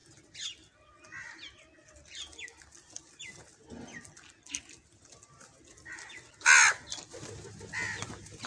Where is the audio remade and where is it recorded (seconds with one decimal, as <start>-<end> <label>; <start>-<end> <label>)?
0.0-8.5 recorded